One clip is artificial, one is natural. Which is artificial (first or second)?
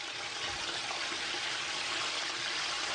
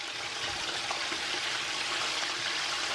second